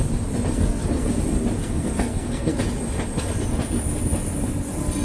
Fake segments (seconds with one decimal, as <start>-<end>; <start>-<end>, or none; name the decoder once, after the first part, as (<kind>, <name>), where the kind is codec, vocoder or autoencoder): 0.5-1.2 (codec, SNAC); 1.6-2.6